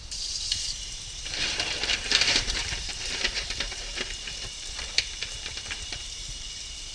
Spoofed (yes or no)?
yes